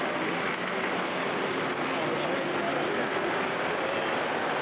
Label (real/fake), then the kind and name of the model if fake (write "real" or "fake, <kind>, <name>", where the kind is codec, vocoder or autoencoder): real